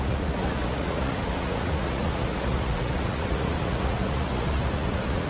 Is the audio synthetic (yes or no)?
yes